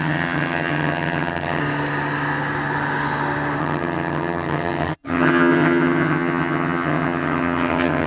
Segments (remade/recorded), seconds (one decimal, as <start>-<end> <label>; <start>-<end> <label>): 0.0-1.6 remade; 1.6-3.6 recorded; 3.6-8.1 remade